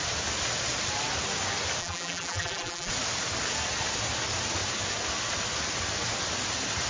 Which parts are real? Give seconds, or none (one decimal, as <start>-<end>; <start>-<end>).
0.0-1.8; 2.9-6.9